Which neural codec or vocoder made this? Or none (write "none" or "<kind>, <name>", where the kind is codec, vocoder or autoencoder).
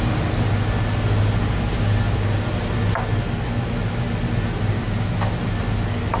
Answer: none